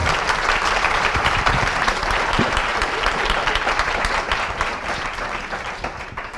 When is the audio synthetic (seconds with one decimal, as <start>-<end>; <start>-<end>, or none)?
0.8-2.7; 3.7-6.4